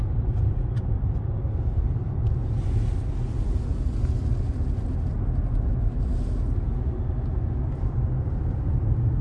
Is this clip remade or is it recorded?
recorded